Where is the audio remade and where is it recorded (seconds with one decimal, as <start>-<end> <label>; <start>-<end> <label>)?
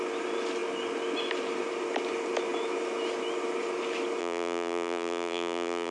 0.0-4.2 recorded; 4.2-5.9 remade